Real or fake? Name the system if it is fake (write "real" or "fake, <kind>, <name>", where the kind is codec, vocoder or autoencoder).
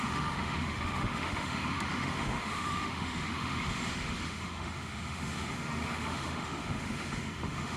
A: fake, autoencoder, DAC-VAE